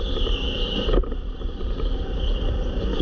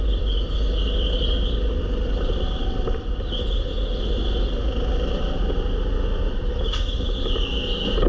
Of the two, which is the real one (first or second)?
second